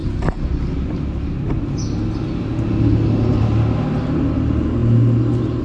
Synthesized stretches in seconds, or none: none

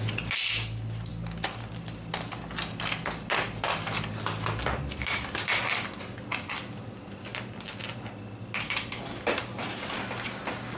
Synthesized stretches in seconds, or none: none

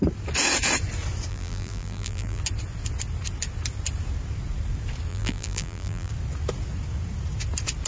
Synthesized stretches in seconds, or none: 1.3-2.4 (vocoder, BigVGAN v2); 5.1-6.1

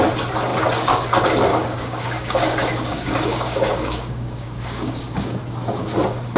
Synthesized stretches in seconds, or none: 1.5-2.4 (codec, DAC); 2.9-5.4

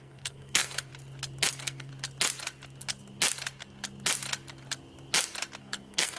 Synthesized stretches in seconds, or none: 0.0-0.9 (codec, SNAC); 1.5-1.9; 5.6-6.2

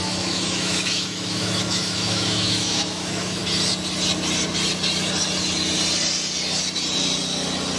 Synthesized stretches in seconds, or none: 0.0-3.4 (autoencoder, DAC-VAE)